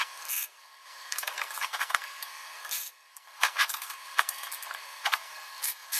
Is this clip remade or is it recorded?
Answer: remade